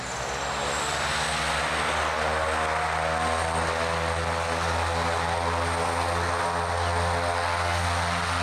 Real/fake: real